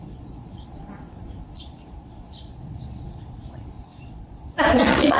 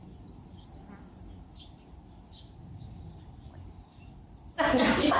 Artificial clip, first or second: first